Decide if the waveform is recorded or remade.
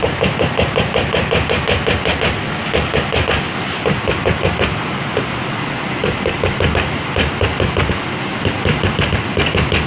recorded